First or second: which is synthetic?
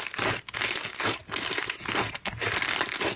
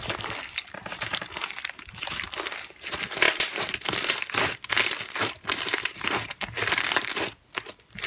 second